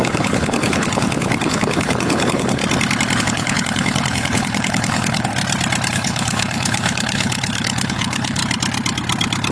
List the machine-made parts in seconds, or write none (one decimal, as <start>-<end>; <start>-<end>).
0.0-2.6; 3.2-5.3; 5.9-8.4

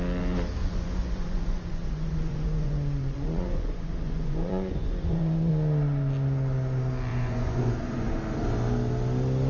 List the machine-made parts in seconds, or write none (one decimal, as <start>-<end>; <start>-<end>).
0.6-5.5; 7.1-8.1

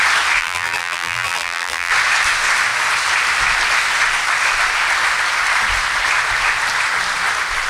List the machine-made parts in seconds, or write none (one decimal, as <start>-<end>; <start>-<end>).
0.4-1.9

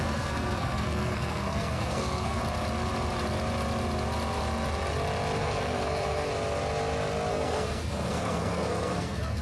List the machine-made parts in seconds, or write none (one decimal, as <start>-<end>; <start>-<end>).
0.0-2.4; 5.4-6.3; 7.3-9.4

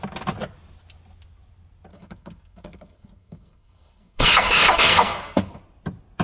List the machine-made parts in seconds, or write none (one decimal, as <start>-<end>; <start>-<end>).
1.9-5.6

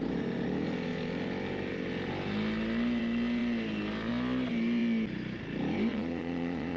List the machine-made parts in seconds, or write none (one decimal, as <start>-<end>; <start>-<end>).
5.9-6.8

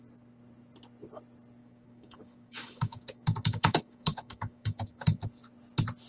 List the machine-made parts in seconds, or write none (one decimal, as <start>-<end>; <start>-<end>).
1.6-5.3